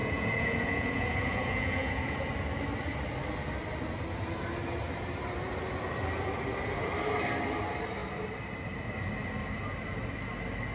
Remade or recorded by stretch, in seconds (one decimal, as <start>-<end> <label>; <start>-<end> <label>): 0.0-2.3 remade; 2.3-10.7 recorded